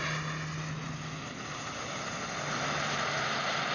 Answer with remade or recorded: recorded